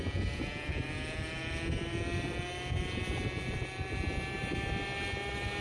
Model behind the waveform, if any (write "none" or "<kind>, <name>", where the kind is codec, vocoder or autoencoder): none